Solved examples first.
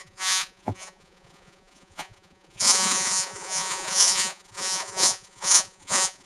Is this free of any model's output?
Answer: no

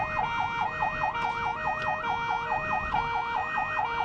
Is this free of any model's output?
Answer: yes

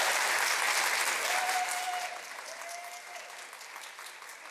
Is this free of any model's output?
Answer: yes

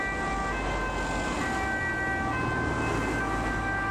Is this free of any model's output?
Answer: yes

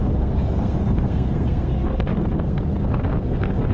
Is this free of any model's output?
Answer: no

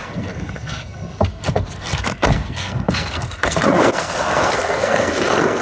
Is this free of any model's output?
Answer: no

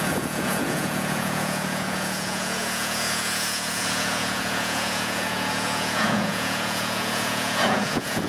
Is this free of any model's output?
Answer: no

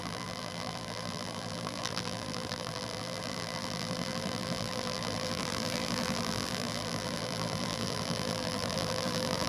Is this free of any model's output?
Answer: no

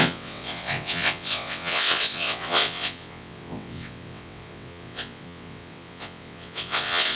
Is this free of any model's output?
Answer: no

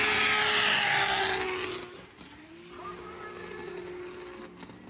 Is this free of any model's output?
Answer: yes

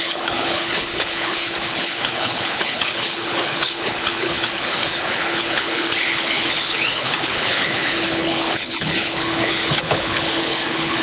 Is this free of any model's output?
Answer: no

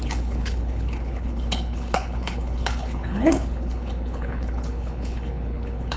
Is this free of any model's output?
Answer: no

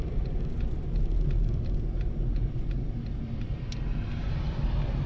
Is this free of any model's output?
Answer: yes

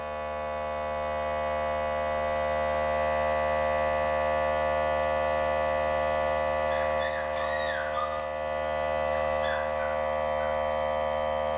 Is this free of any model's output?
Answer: yes